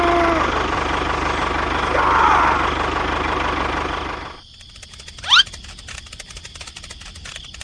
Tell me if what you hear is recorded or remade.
recorded